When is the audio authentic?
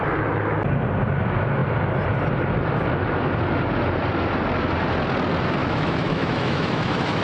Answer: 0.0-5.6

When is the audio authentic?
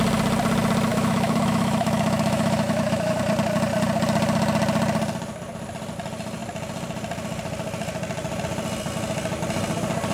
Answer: 0.0-0.9; 3.2-10.1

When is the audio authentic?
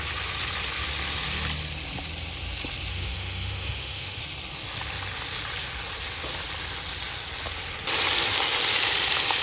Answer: 0.0-2.9; 4.2-9.4